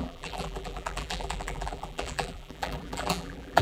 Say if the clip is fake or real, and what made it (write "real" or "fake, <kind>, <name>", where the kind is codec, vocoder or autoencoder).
fake, vocoder, BigVGAN v2